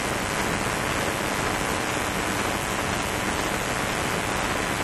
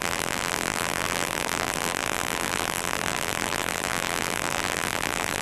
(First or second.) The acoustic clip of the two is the first